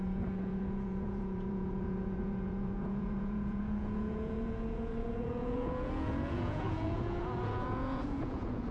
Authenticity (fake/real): fake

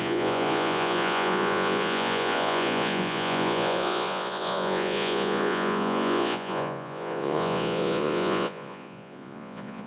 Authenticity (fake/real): fake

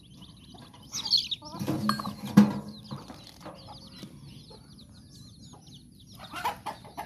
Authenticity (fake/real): real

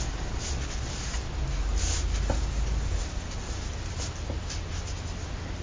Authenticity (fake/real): real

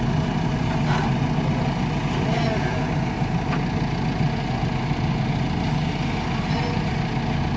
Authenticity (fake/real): real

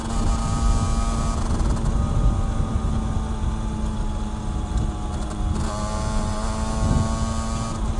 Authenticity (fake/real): real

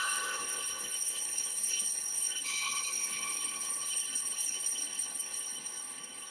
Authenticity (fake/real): fake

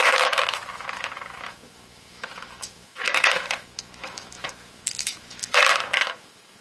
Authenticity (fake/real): fake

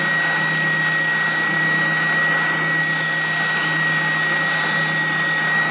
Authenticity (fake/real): real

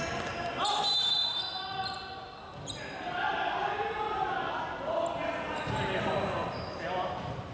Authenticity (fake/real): real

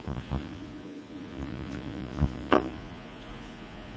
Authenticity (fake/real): fake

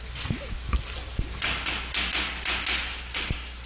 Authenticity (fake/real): real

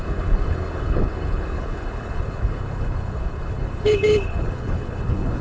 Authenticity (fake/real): fake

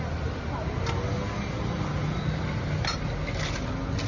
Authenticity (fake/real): real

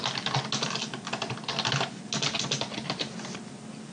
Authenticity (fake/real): real